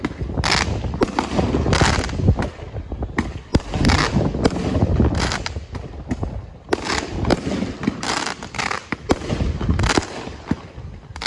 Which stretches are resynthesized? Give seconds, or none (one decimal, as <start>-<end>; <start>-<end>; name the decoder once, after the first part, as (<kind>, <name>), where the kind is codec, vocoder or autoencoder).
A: none